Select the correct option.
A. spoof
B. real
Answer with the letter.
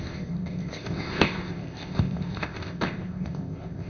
A